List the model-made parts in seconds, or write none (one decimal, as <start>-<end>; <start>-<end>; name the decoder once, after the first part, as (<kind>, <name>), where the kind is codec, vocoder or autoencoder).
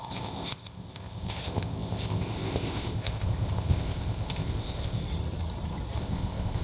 0.0-5.0 (codec, ZipCodec); 6.0-6.6